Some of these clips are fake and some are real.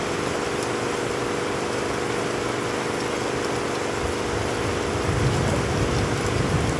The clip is real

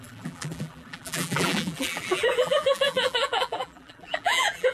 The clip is fake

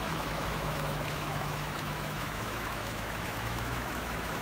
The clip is fake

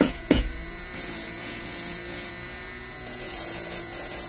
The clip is fake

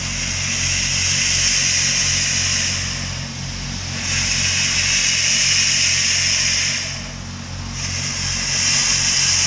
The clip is real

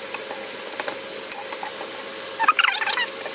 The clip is real